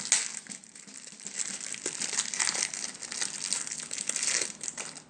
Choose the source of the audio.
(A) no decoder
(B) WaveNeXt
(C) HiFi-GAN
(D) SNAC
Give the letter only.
A